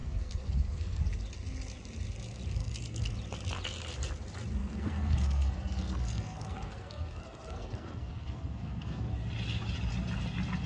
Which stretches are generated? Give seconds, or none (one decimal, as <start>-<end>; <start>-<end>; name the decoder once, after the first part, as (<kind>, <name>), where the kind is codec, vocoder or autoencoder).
0.0-1.0 (codec, SNAC); 2.6-3.1; 4.6-9.1